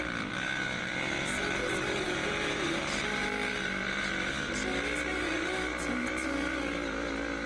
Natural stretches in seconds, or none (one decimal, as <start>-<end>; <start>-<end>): 0.0-1.6; 2.8-5.1; 6.1-7.5